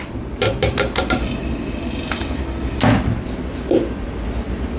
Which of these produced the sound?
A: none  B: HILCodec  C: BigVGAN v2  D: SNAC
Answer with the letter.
A